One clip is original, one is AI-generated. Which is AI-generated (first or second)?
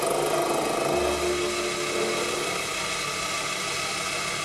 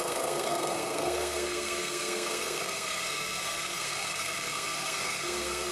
second